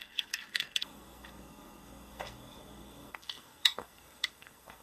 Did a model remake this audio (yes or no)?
yes